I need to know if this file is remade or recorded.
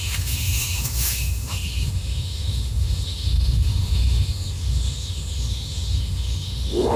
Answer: remade